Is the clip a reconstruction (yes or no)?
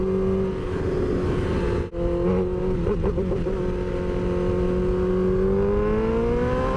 no